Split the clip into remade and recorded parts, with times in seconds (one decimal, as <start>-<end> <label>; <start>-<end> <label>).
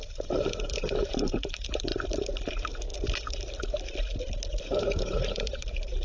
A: 0.0-1.9 remade; 1.9-2.5 recorded; 2.5-2.9 remade; 2.9-4.6 recorded; 4.6-6.0 remade